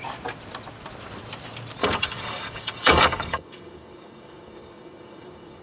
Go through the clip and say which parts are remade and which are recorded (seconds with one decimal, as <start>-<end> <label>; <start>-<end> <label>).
0.0-1.8 recorded; 1.8-5.6 remade